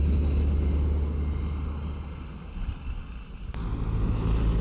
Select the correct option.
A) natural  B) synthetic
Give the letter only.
A